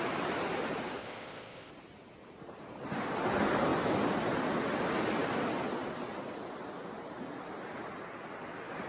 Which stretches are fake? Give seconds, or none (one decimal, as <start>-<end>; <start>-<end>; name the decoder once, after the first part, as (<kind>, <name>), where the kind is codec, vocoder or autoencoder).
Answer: 1.0-1.7 (codec, ZipCodec)